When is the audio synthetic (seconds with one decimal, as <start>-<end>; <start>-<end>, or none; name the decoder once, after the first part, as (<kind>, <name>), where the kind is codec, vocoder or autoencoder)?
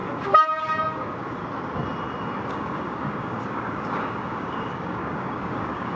0.0-1.4 (codec, DAC); 2.5-6.0